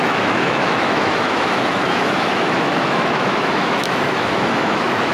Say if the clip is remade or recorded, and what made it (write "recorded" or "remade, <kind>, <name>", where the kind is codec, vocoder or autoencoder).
remade, autoencoder, DAC-VAE